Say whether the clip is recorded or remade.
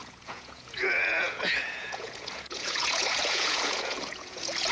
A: remade